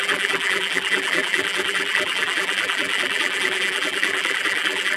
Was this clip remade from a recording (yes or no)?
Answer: yes